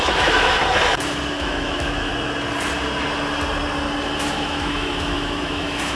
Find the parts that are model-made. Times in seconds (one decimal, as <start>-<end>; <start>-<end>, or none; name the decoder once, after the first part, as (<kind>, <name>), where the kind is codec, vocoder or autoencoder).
0.0-0.6 (autoencoder, DAC-VAE); 1.3-2.1; 4.2-6.0